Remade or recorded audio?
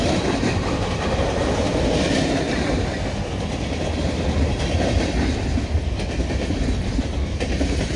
remade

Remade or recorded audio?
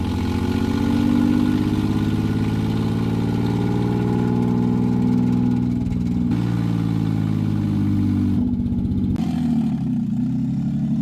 recorded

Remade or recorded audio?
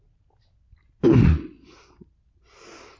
recorded